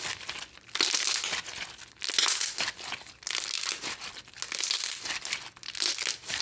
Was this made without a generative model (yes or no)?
yes